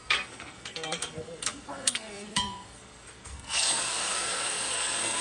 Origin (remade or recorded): remade